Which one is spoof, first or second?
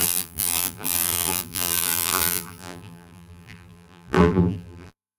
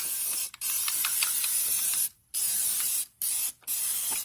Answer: first